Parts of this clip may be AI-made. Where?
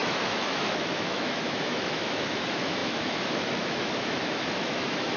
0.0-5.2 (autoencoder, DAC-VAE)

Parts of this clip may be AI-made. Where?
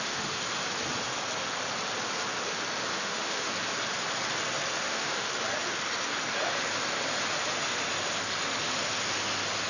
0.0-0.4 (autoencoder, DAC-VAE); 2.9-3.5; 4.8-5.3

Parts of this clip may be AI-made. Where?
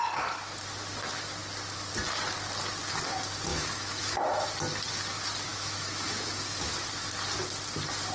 3.5-4.5 (autoencoder, DAC-VAE); 5.5-6.6